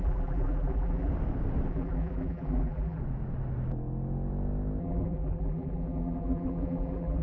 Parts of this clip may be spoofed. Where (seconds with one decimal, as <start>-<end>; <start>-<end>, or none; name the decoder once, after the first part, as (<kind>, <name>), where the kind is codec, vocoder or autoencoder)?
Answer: 0.0-1.1 (vocoder, BigVGAN v2); 1.7-3.0; 4.8-7.2